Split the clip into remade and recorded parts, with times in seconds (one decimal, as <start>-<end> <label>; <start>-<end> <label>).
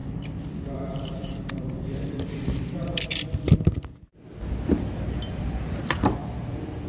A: 0.0-4.1 remade; 4.1-6.9 recorded